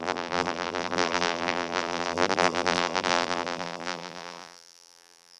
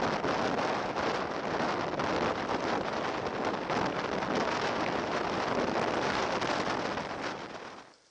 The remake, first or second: first